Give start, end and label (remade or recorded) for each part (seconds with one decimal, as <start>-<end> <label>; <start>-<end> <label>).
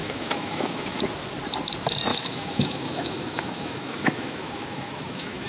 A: 0.0-1.0 remade; 1.0-2.1 recorded; 2.1-5.5 remade